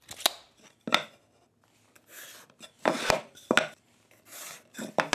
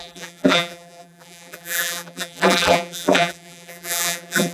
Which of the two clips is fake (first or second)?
second